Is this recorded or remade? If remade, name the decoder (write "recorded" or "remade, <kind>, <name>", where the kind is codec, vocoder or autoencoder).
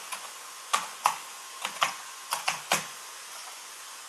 remade, vocoder, Vocos